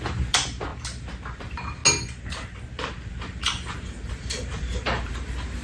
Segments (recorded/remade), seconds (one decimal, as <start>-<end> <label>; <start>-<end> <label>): 0.0-0.7 remade; 0.7-1.4 recorded; 1.4-1.8 remade; 1.8-3.1 recorded; 3.1-5.6 remade